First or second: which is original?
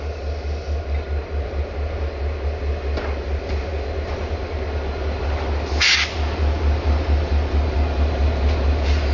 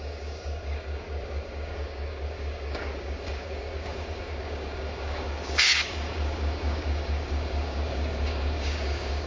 first